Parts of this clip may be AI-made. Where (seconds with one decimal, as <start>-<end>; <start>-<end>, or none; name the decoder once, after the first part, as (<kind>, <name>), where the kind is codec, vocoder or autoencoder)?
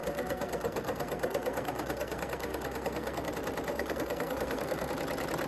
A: 0.0-3.3 (codec, SNAC); 3.7-4.9